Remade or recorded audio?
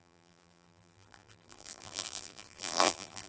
remade